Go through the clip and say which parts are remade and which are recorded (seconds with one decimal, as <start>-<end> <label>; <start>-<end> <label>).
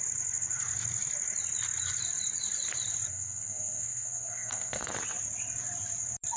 0.0-3.1 recorded; 3.1-4.9 remade; 4.9-6.4 recorded